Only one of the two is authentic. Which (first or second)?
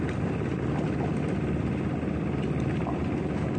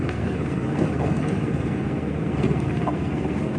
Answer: first